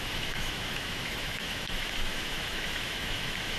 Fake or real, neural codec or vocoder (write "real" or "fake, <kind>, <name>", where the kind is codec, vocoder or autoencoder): fake, autoencoder, DAC-VAE